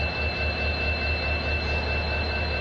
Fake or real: real